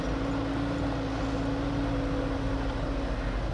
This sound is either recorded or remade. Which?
recorded